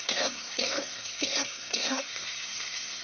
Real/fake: fake